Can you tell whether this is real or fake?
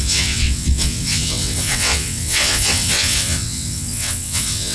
fake